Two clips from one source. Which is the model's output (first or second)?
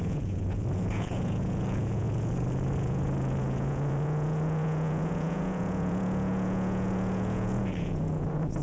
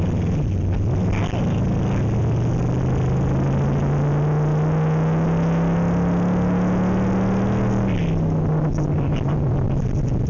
first